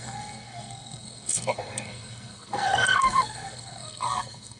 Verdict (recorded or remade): remade